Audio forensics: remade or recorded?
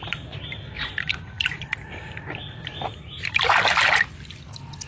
recorded